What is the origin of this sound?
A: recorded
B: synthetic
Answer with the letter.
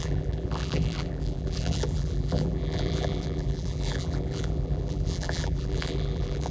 B